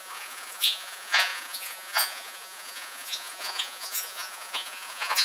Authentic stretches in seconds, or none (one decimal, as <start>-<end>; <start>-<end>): none